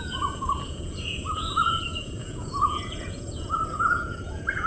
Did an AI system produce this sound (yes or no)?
yes